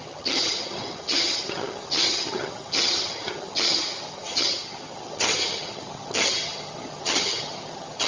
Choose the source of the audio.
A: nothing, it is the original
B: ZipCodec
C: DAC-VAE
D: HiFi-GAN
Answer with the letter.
D